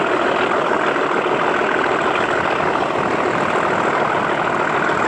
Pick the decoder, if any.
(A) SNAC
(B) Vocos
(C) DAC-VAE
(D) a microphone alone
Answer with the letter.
D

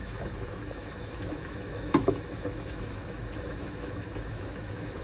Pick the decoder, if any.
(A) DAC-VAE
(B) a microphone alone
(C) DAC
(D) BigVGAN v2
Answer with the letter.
A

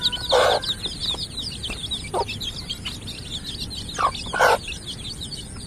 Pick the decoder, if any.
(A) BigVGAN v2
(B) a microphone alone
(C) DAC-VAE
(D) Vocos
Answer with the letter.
B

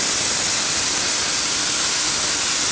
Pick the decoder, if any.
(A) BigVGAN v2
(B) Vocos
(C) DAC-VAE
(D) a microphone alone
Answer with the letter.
D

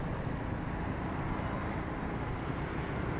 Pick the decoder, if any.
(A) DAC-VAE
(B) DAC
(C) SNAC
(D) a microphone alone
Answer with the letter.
D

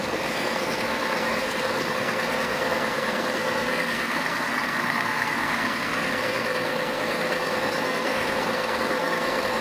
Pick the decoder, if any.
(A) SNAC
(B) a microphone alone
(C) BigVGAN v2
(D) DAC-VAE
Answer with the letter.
A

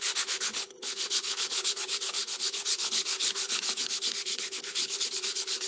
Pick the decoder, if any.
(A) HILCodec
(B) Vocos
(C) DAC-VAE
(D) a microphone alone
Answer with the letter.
A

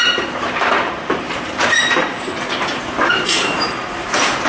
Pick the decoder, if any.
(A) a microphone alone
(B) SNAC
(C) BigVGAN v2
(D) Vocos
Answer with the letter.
C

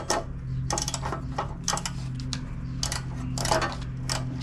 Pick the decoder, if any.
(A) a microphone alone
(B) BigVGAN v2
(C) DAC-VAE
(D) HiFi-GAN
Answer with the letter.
A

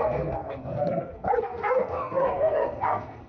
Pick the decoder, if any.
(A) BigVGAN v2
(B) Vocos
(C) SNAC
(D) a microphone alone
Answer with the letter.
C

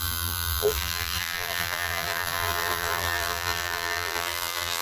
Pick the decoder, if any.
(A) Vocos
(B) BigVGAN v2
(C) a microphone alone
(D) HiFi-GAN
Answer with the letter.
B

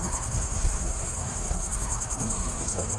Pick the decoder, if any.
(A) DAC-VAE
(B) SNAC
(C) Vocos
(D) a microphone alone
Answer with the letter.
B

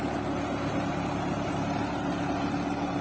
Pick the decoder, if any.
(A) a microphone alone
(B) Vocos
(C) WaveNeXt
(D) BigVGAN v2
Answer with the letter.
A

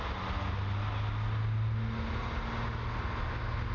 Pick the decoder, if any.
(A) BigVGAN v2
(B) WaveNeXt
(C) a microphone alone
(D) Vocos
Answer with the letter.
C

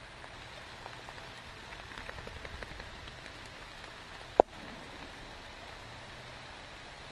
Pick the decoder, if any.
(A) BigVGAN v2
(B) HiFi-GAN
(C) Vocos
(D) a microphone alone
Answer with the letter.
D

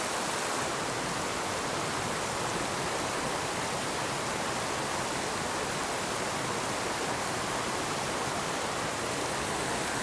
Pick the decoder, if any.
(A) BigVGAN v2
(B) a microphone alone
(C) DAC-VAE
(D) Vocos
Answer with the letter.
B